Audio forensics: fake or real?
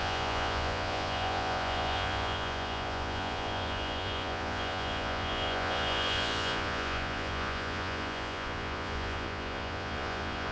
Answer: fake